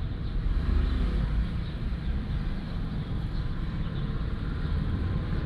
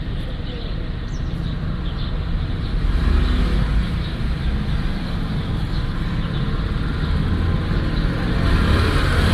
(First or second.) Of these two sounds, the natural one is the second